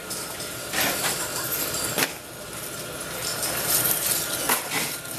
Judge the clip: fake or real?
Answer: real